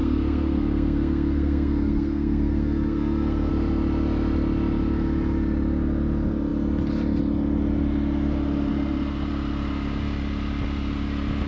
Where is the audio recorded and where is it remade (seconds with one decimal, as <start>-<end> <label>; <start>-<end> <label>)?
0.0-3.5 remade; 3.5-11.5 recorded